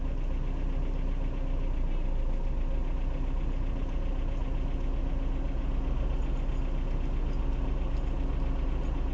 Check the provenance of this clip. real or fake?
real